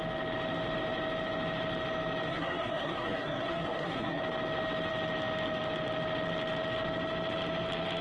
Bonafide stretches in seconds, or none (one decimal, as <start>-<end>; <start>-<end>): 0.0-2.3; 4.2-8.0